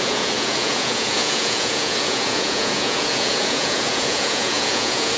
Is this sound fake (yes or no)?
yes